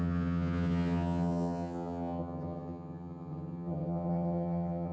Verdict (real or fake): fake